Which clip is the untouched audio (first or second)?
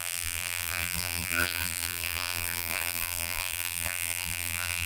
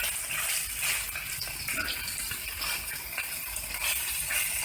second